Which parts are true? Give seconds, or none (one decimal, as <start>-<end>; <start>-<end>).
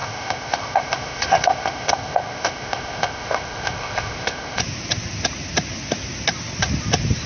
4.6-7.3